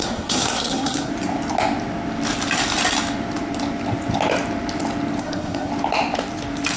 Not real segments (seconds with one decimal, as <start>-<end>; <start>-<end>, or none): 0.0-1.1; 5.2-5.7

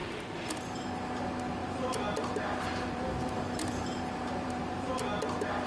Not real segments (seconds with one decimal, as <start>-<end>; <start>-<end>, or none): 1.6-4.9

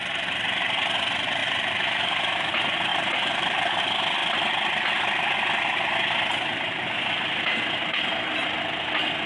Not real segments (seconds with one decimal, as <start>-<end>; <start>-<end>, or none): 1.4-2.5; 2.9-3.8

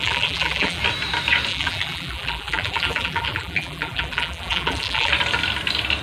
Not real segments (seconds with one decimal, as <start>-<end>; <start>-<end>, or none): 0.0-0.8; 1.5-5.1

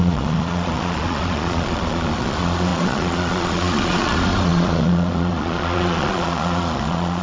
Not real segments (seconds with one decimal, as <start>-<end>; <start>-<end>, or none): 0.0-7.2

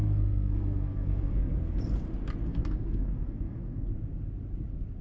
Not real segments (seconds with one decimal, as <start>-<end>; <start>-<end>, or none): 0.0-1.8; 2.4-3.9

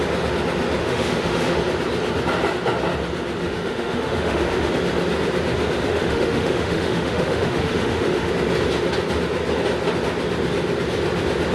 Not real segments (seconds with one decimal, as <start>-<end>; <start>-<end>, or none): 0.8-1.6; 3.4-4.7; 5.9-8.3